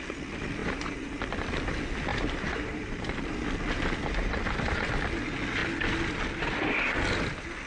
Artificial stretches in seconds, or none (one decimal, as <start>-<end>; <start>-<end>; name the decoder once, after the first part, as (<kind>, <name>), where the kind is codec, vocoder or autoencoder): 0.6-1.2 (vocoder, BigVGAN v2); 2.1-3.1